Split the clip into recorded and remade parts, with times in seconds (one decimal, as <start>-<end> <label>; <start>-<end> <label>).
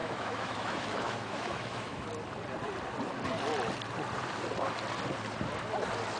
0.0-2.1 remade; 2.1-6.2 recorded